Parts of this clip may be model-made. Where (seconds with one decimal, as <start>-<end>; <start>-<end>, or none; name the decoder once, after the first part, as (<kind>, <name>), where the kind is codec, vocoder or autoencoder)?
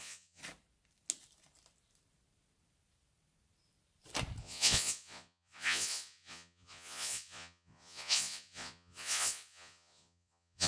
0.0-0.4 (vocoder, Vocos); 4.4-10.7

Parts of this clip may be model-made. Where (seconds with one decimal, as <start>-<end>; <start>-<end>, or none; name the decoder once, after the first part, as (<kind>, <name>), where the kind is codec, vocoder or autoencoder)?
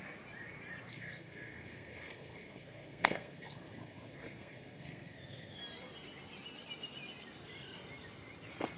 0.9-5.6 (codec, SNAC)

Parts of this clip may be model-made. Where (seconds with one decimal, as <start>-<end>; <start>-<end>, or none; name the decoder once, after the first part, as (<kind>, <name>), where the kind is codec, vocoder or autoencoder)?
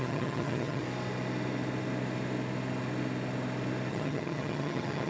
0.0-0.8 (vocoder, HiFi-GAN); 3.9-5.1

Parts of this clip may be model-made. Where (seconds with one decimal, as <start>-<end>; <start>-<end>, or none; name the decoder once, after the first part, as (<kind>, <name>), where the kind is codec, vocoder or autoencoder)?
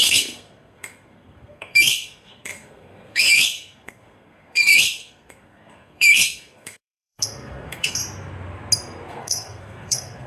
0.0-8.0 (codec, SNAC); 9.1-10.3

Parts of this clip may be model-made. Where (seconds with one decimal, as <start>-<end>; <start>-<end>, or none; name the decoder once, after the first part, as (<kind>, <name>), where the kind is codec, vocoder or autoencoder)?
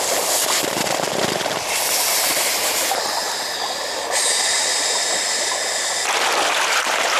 none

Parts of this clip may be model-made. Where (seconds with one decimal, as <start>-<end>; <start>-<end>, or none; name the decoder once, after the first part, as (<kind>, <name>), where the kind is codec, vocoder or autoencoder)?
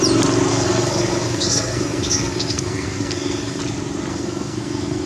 0.5-3.6 (codec, SNAC); 4.1-5.1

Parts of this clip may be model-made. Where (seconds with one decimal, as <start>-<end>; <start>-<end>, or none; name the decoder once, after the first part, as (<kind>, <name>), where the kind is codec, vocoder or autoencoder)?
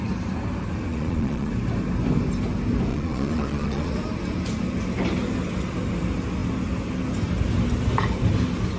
0.9-1.5 (vocoder, Vocos); 2.9-3.9